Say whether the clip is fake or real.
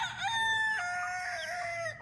real